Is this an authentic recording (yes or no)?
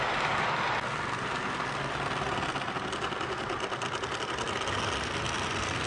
yes